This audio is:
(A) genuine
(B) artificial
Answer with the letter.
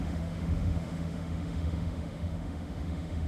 B